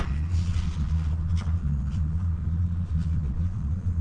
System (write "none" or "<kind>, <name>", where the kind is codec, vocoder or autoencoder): vocoder, Vocos